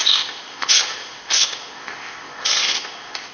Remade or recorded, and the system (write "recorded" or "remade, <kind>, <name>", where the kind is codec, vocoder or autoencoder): remade, codec, ZipCodec